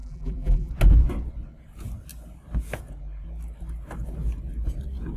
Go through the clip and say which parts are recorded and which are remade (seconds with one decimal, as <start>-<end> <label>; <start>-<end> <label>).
0.0-0.7 remade; 0.7-5.2 recorded